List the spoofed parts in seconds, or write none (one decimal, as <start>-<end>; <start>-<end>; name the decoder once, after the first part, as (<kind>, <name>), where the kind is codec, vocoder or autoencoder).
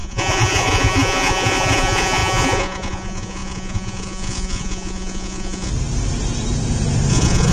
0.0-5.7 (vocoder, Vocos); 7.1-7.5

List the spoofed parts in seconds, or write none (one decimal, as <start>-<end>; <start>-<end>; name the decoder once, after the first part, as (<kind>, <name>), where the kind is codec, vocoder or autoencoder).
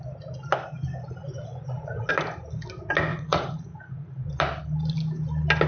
1.2-2.1 (vocoder, Vocos); 3.1-4.3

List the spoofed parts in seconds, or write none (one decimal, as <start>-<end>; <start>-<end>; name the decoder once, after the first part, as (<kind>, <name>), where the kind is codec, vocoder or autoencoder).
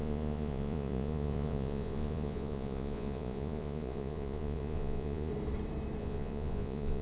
0.0-5.3 (vocoder, Vocos); 6.0-7.0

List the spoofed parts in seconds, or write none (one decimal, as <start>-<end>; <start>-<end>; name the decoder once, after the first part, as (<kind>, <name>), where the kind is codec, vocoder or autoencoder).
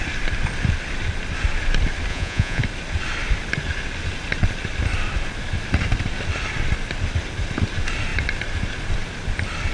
2.1-2.6 (vocoder, Vocos)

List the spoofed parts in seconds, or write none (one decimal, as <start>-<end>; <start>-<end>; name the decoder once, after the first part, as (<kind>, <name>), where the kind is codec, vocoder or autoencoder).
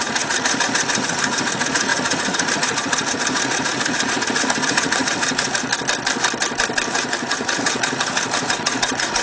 0.0-5.7 (vocoder, Vocos); 6.9-9.2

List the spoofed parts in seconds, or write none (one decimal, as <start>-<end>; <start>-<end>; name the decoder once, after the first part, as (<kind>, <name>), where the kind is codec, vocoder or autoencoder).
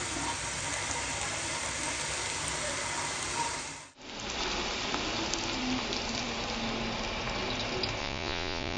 8.0-8.8 (vocoder, Vocos)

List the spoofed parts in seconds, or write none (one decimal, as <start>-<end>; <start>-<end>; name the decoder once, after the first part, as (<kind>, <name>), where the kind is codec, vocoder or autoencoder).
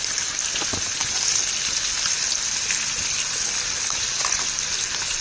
none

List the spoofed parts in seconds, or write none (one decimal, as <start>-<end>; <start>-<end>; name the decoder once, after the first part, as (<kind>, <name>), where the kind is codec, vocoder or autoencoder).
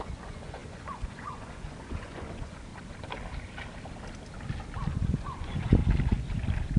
0.0-2.7 (vocoder, Vocos); 4.9-5.8